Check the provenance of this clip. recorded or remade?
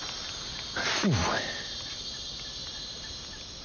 recorded